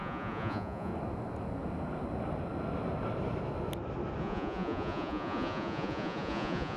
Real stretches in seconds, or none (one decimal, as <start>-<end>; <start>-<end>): 0.9-4.2